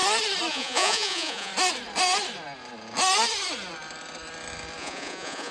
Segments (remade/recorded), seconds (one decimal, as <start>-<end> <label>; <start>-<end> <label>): 0.0-0.5 recorded; 0.5-1.5 remade; 1.5-4.8 recorded; 4.8-5.5 remade